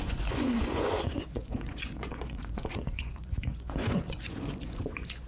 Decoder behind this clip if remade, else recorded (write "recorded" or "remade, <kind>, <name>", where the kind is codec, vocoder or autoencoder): remade, vocoder, Vocos